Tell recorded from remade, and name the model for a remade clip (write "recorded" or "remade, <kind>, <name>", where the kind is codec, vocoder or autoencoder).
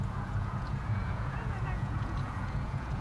remade, vocoder, Vocos